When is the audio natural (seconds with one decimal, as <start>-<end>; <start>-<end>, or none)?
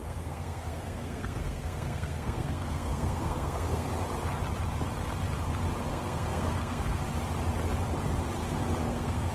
3.9-5.9; 7.0-8.8